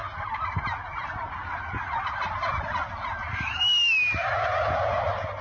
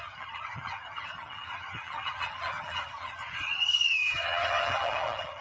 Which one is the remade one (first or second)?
second